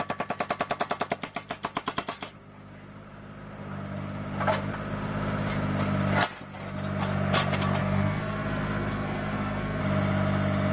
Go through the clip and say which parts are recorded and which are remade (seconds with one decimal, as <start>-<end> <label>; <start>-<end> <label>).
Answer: 0.0-7.8 recorded; 7.8-9.8 remade; 9.8-10.7 recorded